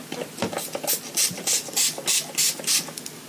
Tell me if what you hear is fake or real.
real